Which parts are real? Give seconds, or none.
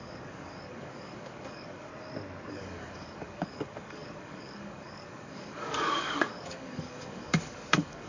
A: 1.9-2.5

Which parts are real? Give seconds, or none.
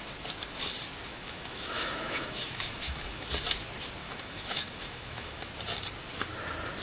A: 0.0-1.1; 3.3-4.0; 5.5-6.8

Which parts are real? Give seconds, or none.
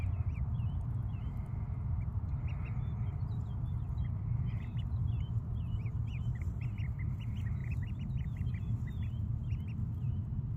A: 0.0-7.6; 8.5-10.6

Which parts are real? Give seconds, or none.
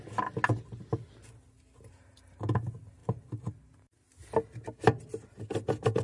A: 0.0-6.0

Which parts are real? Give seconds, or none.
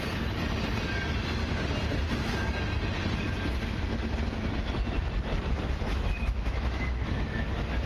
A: 0.0-5.9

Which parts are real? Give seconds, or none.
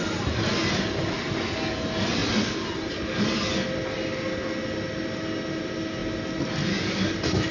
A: 0.0-7.5